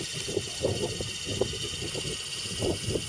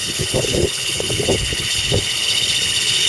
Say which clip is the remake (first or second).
second